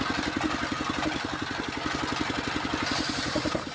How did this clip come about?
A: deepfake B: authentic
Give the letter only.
B